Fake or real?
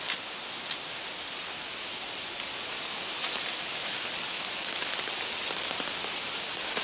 real